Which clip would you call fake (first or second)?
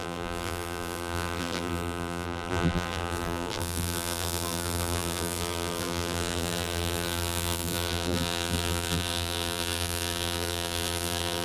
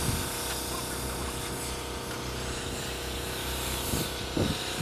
first